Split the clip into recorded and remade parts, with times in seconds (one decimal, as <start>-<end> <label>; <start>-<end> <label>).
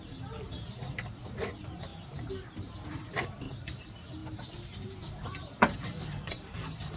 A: 0.0-4.2 remade; 4.2-5.1 recorded; 5.1-7.0 remade